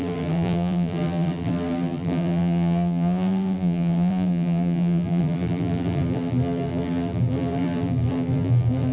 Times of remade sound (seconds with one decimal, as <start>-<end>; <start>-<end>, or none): 0.0-8.9